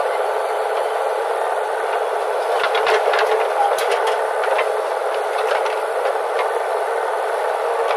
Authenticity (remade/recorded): recorded